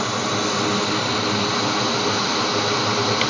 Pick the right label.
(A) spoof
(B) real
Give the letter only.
B